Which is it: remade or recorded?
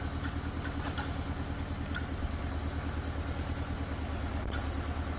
recorded